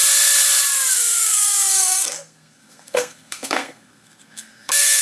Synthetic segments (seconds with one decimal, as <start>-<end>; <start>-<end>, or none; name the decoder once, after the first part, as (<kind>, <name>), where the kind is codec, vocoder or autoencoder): 0.9-5.0 (codec, SNAC)

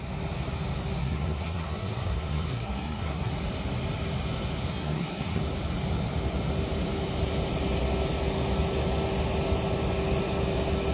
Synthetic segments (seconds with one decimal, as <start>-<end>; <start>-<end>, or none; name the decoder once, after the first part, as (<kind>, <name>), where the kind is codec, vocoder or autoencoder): 1.0-3.3 (codec, SNAC); 4.7-5.4

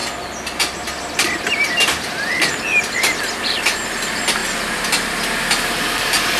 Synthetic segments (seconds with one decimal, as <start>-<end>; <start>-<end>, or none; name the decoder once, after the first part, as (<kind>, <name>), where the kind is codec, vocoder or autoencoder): none

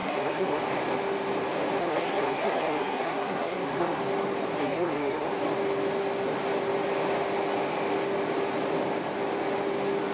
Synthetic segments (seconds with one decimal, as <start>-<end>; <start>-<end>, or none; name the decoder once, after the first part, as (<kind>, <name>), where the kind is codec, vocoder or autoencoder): 0.0-0.6 (codec, SNAC); 1.8-4.0; 4.6-5.3

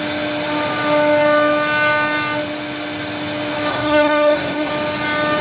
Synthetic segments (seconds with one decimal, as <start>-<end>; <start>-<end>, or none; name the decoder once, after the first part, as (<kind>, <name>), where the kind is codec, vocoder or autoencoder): 3.7-4.7 (codec, SNAC)